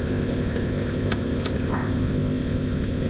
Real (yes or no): no